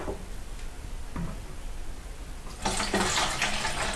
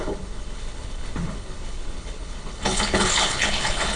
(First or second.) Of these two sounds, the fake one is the second